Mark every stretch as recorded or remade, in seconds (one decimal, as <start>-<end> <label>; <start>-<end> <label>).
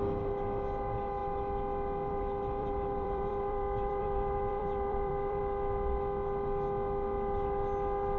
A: 0.0-2.6 recorded; 2.6-5.4 remade; 5.4-8.2 recorded